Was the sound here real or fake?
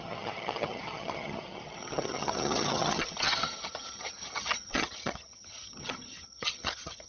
fake